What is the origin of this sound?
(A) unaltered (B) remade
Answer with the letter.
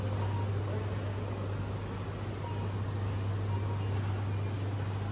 A